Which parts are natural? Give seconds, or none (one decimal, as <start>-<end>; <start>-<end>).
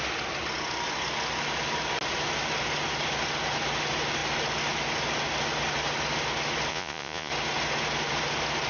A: 0.0-6.7; 7.3-8.7